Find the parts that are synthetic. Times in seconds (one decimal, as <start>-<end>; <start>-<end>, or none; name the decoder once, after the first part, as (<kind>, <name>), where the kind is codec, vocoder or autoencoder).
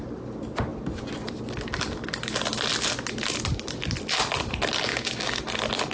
4.9-5.4 (codec, DAC)